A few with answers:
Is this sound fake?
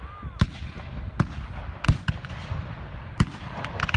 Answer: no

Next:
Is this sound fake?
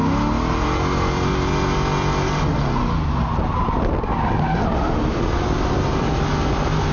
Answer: no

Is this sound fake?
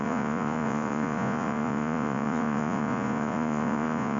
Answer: yes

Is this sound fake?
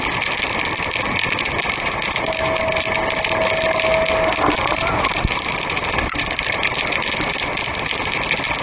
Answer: no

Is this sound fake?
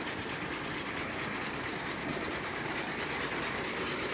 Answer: no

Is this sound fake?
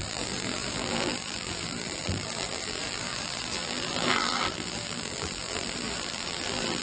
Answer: yes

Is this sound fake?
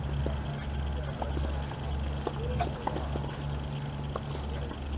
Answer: no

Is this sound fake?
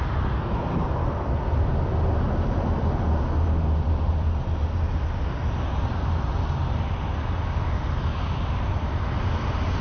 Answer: no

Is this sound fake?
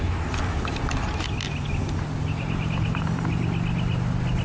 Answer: no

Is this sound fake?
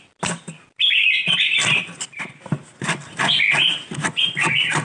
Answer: no